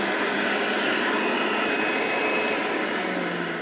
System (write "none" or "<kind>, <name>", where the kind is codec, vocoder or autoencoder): none